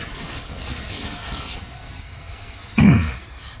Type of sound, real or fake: fake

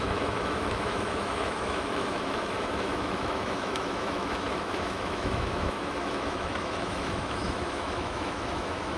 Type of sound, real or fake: fake